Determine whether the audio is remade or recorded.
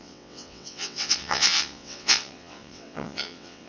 remade